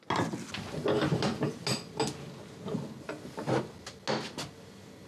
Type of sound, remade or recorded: recorded